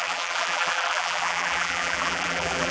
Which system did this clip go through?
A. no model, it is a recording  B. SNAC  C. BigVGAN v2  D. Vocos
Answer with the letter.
C